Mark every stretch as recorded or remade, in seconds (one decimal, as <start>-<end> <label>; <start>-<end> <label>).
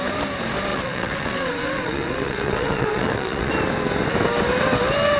0.0-0.7 recorded; 0.7-3.5 remade; 3.5-5.2 recorded